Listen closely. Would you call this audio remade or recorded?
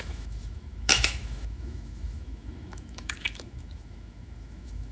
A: remade